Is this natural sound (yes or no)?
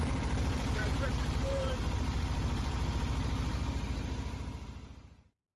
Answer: no